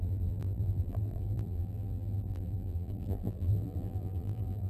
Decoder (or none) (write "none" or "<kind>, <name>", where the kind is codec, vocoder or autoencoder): vocoder, BigVGAN v2